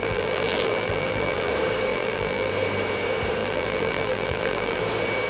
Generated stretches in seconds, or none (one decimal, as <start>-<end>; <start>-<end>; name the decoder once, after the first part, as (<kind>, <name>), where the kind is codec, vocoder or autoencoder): 0.0-1.5 (vocoder, BigVGAN v2); 1.9-2.5; 3.4-4.8